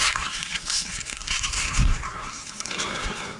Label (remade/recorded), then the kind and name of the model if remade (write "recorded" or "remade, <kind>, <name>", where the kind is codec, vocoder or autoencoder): remade, codec, SNAC